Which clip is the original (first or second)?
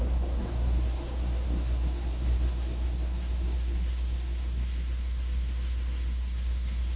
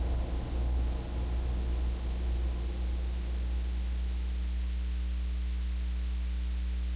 second